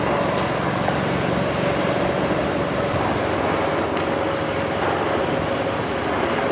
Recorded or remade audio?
recorded